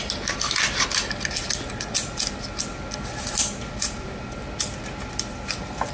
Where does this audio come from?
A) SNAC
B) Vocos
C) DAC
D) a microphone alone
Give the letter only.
D